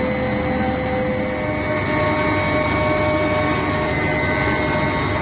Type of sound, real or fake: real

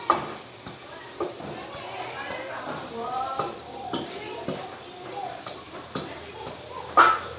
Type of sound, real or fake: fake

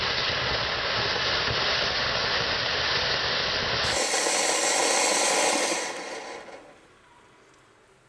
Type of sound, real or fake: real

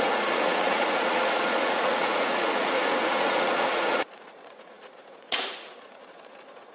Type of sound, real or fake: fake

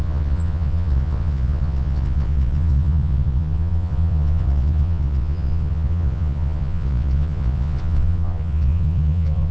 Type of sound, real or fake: fake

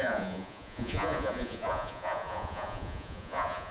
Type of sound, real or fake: fake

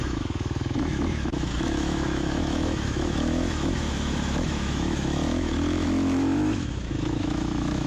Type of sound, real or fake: fake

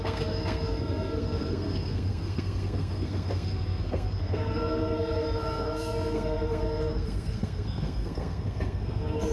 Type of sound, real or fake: fake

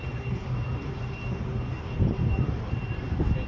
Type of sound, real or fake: fake